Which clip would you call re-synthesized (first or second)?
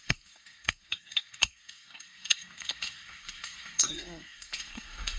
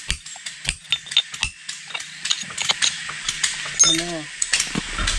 first